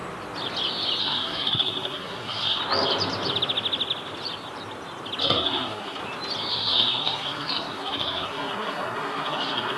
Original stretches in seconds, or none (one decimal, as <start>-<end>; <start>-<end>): 0.0-1.0; 2.6-5.2; 6.0-6.5